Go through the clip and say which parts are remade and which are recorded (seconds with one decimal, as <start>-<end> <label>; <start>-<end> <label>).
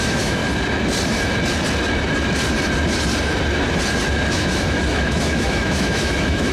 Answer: 0.0-0.4 remade; 0.4-4.3 recorded; 4.3-6.5 remade